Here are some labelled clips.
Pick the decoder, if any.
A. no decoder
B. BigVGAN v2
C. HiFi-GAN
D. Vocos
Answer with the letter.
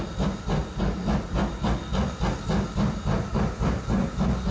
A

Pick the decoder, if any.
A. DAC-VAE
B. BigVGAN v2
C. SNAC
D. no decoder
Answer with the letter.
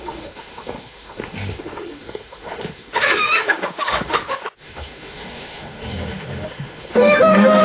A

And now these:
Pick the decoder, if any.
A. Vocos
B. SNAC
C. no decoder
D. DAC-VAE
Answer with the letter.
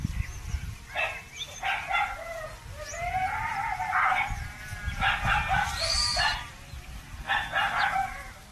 C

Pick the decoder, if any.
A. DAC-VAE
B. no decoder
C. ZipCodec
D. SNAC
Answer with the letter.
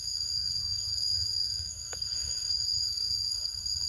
D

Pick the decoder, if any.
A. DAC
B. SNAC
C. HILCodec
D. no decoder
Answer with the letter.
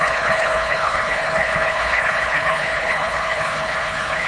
C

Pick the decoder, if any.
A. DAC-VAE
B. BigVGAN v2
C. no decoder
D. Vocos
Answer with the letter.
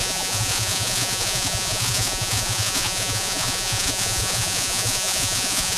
D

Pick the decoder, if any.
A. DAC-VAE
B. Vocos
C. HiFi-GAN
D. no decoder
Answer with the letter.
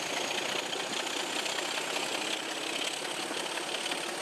D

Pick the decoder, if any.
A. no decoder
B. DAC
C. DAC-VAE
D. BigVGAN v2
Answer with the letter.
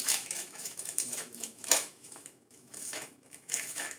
C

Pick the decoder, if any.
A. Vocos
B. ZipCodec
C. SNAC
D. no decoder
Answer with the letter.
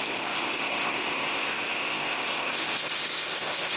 B